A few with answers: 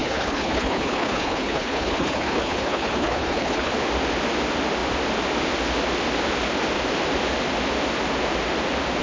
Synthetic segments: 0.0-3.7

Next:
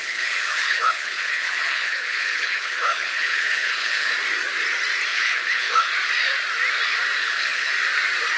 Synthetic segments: 0.0-4.1; 5.1-5.9; 7.2-7.7

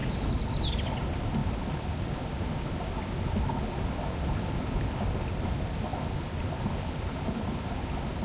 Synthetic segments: none

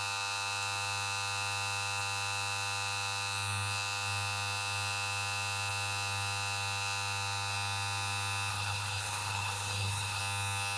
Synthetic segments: 8.5-10.2

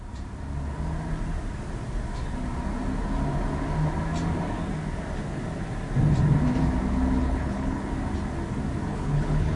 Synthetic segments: 7.2-7.8; 8.9-9.6

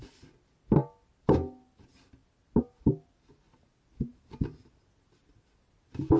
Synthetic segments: none

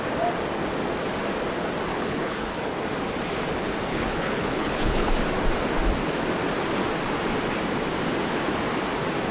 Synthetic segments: 1.9-2.7; 3.9-5.1